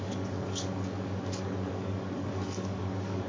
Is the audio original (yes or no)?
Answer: no